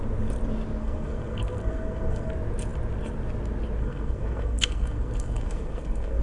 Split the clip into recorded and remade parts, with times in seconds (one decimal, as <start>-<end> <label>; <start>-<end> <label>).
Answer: 0.0-0.8 recorded; 0.8-2.3 remade; 2.3-3.8 recorded; 3.8-6.2 remade